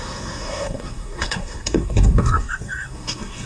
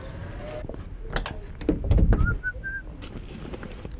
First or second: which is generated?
first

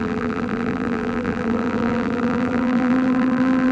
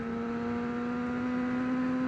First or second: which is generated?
first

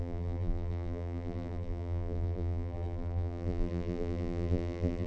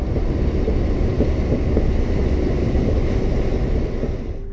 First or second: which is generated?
first